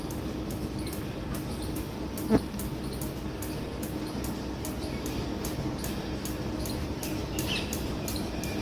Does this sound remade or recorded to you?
recorded